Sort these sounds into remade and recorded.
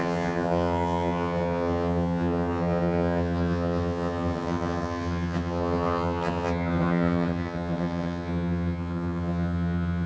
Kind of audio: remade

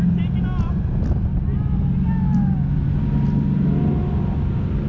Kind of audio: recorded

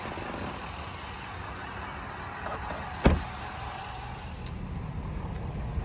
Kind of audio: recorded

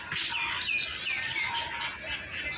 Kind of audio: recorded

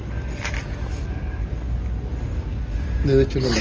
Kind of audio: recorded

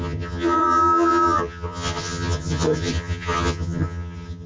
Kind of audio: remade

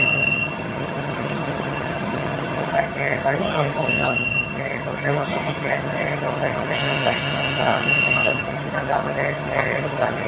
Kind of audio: remade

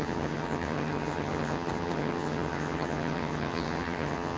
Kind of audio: remade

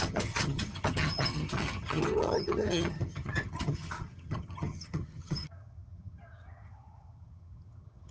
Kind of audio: remade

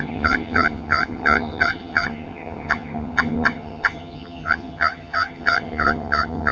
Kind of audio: remade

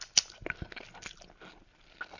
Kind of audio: recorded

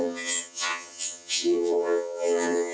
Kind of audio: remade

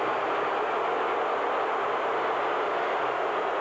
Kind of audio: recorded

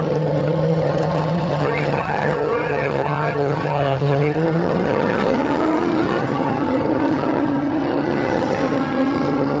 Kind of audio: remade